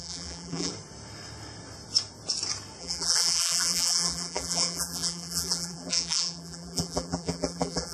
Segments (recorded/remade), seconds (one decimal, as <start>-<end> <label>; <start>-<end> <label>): 0.0-0.7 remade; 0.7-2.8 recorded; 2.8-7.9 remade